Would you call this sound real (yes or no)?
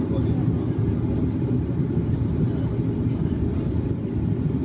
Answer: yes